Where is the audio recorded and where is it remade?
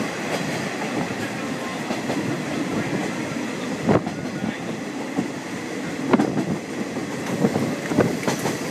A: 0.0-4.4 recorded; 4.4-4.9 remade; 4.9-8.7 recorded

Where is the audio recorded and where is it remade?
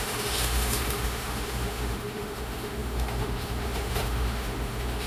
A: 0.0-5.1 remade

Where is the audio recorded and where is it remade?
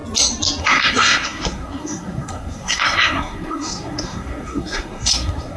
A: 0.0-0.6 recorded; 0.6-5.6 remade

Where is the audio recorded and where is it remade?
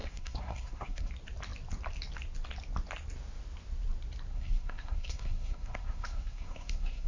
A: 0.0-1.1 remade; 1.1-4.3 recorded; 4.3-7.1 remade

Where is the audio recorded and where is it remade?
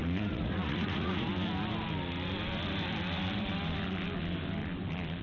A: 0.0-1.3 remade; 1.3-5.2 recorded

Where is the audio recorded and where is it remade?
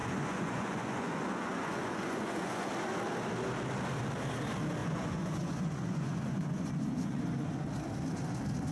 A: 0.0-2.7 remade; 2.7-4.8 recorded; 4.8-7.2 remade; 7.2-8.7 recorded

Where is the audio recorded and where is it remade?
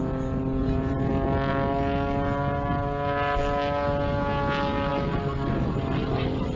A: 0.0-0.6 recorded; 0.6-1.1 remade; 1.1-6.6 recorded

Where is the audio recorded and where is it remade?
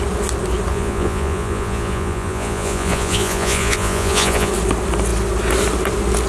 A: 0.0-0.7 recorded; 0.7-4.5 remade; 4.5-6.3 recorded